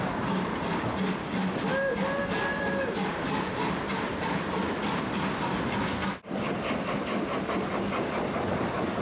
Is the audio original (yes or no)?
yes